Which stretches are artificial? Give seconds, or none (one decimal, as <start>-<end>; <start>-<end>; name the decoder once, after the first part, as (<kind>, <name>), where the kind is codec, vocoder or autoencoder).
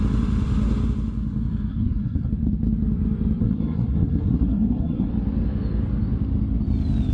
1.7-2.3 (codec, SNAC); 3.4-5.1